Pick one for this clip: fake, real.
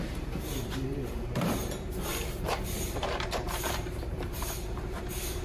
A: fake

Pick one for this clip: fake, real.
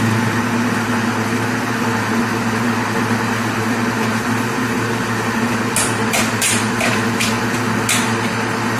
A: real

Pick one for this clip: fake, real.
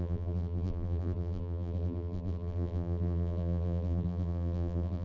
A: fake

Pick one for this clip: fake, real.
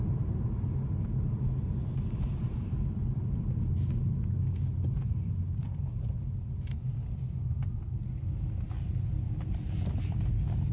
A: real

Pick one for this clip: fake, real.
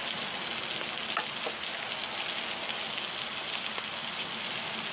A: real